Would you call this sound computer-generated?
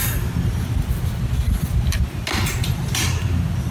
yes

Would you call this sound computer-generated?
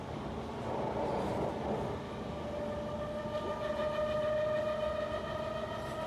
no